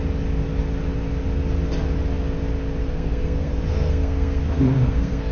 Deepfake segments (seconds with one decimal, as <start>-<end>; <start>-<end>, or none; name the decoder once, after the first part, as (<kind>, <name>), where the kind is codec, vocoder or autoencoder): 2.8-5.3 (codec, SNAC)